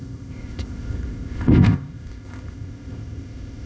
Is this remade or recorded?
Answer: remade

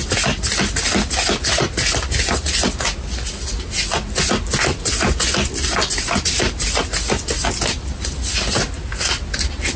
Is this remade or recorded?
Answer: recorded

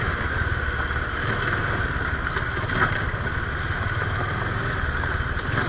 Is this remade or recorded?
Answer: recorded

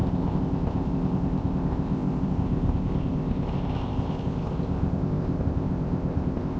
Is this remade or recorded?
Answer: remade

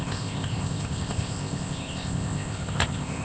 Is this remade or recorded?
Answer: remade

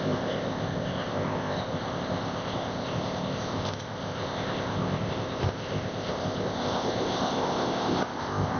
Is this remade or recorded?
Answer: remade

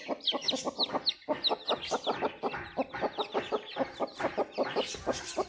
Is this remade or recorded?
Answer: recorded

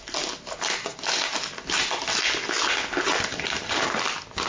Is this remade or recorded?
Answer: recorded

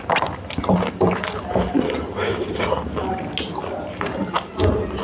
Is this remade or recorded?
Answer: recorded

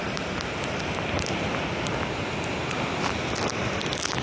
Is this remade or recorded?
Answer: recorded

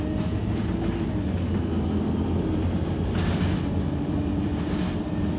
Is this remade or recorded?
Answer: recorded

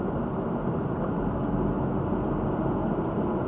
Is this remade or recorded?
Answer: recorded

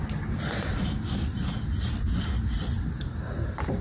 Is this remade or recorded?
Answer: recorded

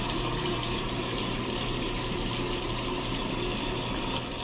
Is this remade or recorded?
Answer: recorded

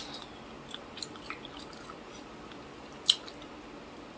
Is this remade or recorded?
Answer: recorded